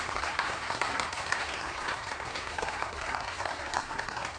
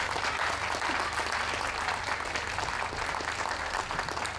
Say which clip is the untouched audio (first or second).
second